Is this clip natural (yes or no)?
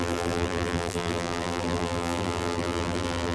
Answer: no